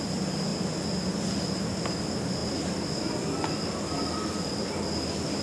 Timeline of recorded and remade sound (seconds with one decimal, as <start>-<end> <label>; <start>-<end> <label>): 0.0-5.4 recorded